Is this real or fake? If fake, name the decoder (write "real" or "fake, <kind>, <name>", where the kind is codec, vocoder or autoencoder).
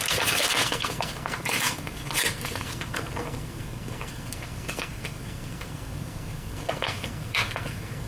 fake, codec, SNAC